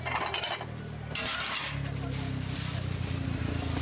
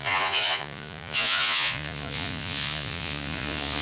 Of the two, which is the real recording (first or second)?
first